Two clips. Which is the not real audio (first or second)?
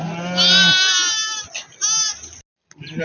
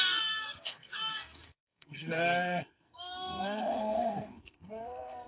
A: second